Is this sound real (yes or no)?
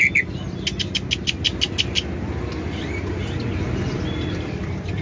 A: yes